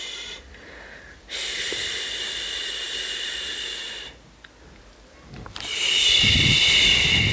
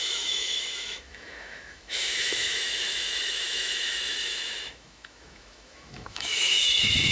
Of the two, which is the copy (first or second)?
second